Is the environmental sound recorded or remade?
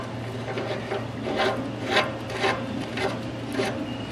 recorded